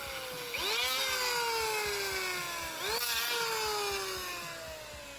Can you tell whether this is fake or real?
real